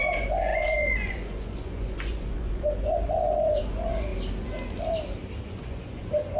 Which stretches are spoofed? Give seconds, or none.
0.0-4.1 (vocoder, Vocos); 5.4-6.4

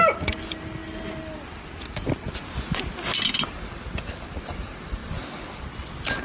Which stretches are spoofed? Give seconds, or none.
none

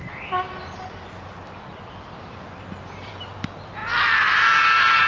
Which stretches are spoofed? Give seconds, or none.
none

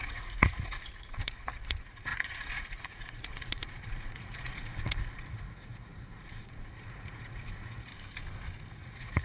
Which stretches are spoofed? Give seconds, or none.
0.0-7.9 (vocoder, Vocos); 8.7-9.2

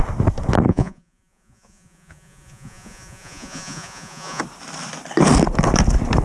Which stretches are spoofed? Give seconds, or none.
0.7-4.4 (vocoder, Vocos)

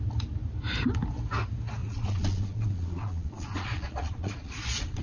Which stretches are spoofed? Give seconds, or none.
1.8-5.0 (vocoder, Vocos)

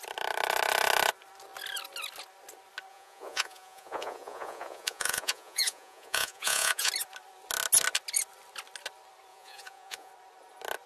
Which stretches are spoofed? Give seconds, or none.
2.9-6.9 (vocoder, Vocos); 9.3-10.1

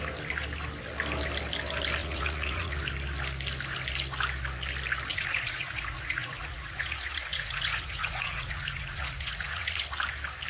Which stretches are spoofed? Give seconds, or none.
2.0-2.8 (vocoder, Vocos); 5.1-9.8